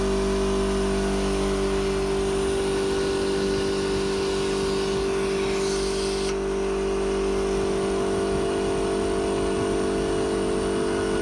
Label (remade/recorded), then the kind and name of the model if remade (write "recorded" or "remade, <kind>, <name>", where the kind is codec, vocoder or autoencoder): recorded